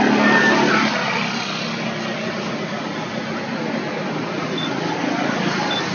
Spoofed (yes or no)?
no